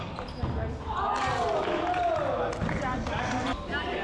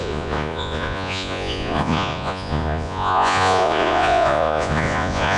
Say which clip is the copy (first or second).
second